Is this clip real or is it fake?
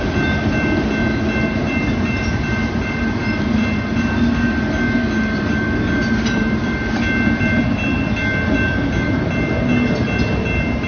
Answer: real